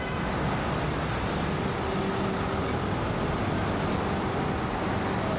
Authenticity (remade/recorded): recorded